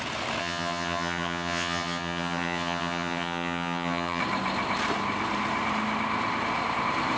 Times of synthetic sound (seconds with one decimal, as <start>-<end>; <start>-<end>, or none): 0.4-4.2